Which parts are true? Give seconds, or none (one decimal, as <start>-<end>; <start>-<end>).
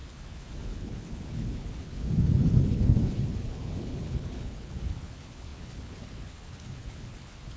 none